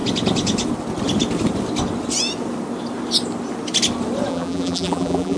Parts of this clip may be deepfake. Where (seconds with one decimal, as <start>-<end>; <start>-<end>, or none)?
4.3-5.4